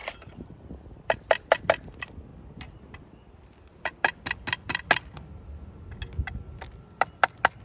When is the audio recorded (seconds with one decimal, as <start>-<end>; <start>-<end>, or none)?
1.6-7.6